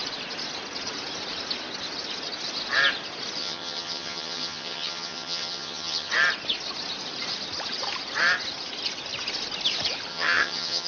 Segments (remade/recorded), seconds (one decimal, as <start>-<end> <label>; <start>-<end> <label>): 0.0-3.4 recorded; 3.4-6.1 remade; 6.1-10.1 recorded; 10.1-10.9 remade